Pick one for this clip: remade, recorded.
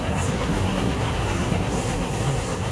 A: remade